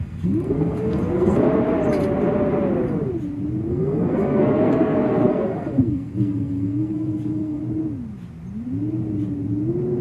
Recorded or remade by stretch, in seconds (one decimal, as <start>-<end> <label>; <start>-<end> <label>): 0.0-1.5 remade; 1.5-3.7 recorded; 3.7-7.6 remade; 7.6-10.0 recorded